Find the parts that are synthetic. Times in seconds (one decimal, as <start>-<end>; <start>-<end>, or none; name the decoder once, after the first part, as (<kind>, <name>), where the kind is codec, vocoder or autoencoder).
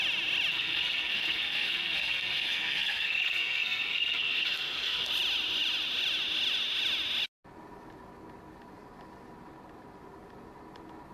0.5-5.1 (codec, SNAC)